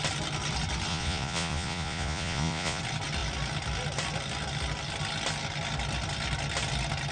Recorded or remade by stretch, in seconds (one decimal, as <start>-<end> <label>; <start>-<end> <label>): 0.0-0.9 recorded; 0.9-2.8 remade; 2.8-7.1 recorded